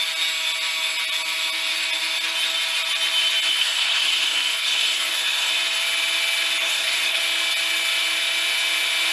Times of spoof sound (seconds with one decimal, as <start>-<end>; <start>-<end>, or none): 3.5-5.5; 6.6-7.2